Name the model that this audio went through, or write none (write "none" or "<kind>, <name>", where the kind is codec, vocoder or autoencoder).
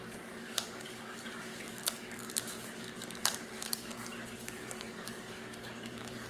codec, DAC